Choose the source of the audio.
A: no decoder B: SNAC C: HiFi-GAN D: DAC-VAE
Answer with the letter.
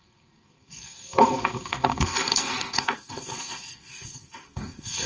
B